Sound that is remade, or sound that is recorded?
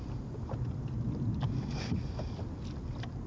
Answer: recorded